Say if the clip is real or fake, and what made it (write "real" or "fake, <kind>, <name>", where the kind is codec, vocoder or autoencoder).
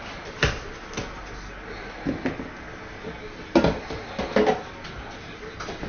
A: real